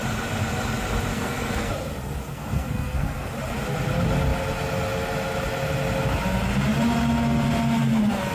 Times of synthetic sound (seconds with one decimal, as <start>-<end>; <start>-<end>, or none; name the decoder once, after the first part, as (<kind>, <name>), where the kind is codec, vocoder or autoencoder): 1.1-1.7 (codec, SNAC); 2.3-3.3